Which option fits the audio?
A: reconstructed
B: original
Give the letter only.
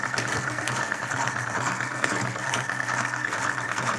A